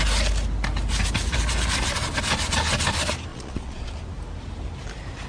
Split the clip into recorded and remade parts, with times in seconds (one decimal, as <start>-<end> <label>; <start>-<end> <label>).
0.0-3.3 recorded; 3.3-4.0 remade; 4.0-5.3 recorded